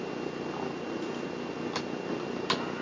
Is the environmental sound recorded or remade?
recorded